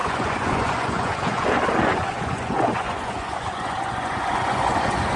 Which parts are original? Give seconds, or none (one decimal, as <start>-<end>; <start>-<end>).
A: 1.5-1.9